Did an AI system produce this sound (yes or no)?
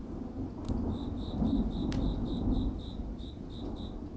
no